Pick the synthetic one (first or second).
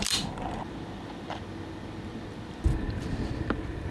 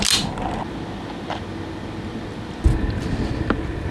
first